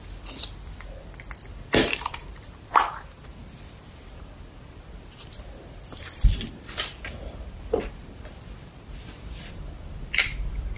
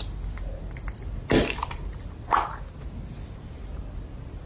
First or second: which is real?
second